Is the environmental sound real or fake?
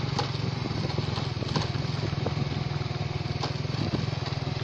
real